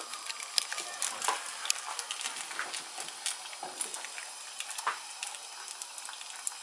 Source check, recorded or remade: recorded